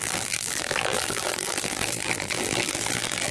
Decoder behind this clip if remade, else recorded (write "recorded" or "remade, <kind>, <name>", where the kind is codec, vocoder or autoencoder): remade, vocoder, BigVGAN v2